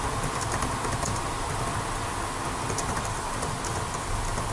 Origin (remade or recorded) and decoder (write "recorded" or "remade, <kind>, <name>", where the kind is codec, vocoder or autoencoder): recorded